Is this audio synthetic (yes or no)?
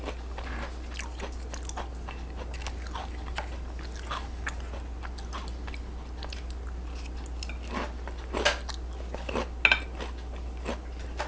no